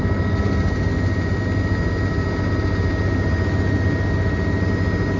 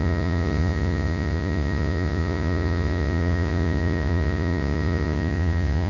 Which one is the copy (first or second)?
second